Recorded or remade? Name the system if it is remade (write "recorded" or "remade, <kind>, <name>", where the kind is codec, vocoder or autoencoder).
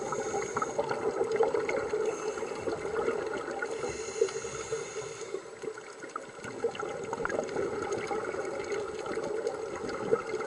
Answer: recorded